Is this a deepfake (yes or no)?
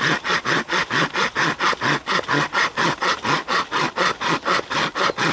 no